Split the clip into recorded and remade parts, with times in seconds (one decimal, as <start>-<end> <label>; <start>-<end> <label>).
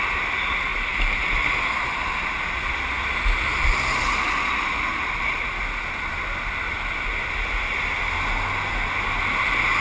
0.0-0.7 recorded; 0.7-1.2 remade; 1.2-9.8 recorded